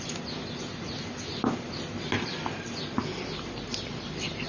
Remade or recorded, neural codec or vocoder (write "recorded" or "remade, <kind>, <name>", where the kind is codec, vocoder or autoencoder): recorded